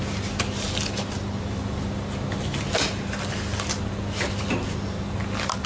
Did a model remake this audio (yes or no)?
no